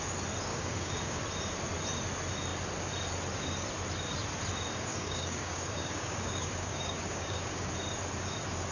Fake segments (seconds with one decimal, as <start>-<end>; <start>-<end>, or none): 0.5-1.2; 4.9-7.7